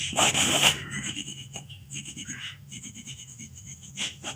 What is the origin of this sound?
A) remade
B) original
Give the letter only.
A